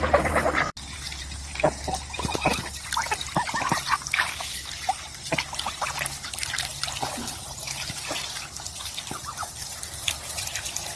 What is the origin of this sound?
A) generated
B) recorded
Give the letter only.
A